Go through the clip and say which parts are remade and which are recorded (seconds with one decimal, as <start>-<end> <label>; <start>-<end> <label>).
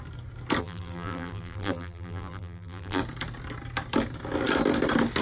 0.0-0.6 recorded; 0.6-3.0 remade; 3.0-5.2 recorded